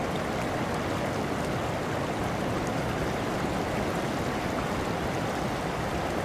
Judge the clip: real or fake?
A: real